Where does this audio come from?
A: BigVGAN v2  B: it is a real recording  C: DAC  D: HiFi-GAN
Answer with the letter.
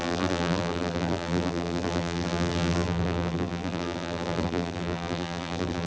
A